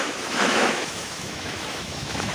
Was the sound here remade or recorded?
remade